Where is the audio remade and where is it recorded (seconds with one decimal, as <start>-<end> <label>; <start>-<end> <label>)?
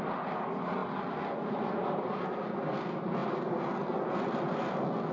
0.0-5.1 recorded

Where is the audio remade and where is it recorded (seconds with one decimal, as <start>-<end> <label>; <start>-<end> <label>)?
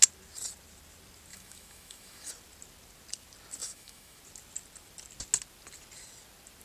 0.0-1.3 recorded; 1.3-2.3 remade; 2.3-3.6 recorded; 3.6-4.2 remade; 4.2-6.6 recorded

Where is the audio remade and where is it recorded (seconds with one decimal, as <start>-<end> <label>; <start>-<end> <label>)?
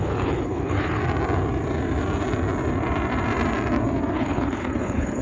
0.0-1.0 remade; 1.0-4.1 recorded; 4.1-5.2 remade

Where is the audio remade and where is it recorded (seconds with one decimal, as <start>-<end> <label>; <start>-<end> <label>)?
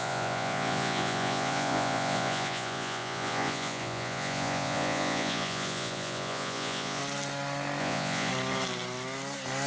0.0-7.0 remade; 7.0-7.8 recorded; 7.8-8.3 remade; 8.3-9.7 recorded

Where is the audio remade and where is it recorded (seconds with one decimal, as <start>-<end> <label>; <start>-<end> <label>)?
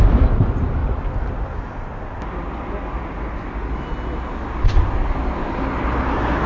0.0-6.5 recorded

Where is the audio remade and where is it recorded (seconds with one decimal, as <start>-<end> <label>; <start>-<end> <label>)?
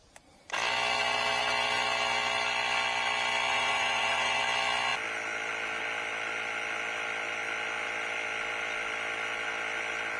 0.0-3.5 recorded; 3.5-4.4 remade; 4.4-10.2 recorded